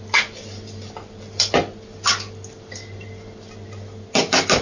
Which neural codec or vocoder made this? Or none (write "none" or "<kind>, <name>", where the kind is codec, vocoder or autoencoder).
none